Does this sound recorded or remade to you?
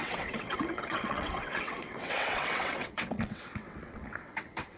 remade